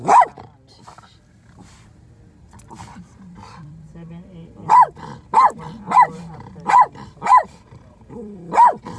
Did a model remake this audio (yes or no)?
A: yes